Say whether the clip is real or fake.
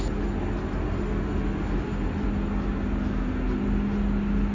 real